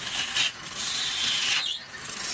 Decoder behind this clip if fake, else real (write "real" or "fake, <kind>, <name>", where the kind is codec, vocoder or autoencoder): real